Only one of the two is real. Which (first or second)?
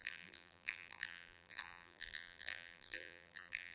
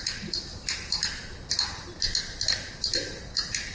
second